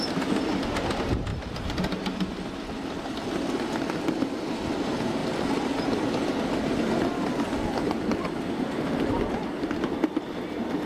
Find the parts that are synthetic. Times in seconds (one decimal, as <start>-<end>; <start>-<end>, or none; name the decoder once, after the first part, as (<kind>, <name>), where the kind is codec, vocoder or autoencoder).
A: none